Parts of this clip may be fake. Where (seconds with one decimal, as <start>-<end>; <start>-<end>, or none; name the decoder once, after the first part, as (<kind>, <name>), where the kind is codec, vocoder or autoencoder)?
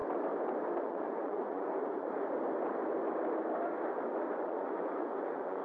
0.8-2.1 (vocoder, Vocos); 4.2-5.6